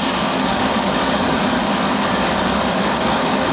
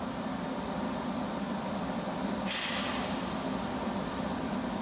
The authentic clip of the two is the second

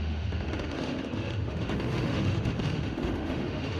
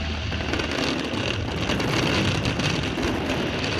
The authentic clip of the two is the second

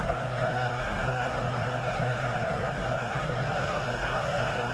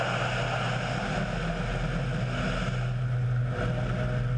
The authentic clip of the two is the second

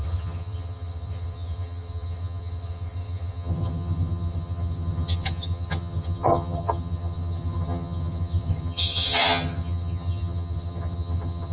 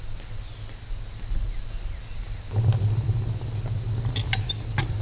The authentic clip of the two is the second